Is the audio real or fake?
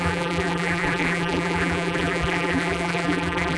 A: fake